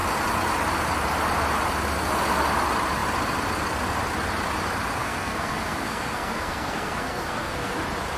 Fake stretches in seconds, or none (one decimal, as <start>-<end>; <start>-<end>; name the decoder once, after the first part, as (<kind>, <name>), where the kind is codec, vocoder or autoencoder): 5.0-7.7 (codec, SNAC)